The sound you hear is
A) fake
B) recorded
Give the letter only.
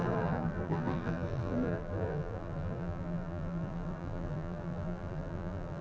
A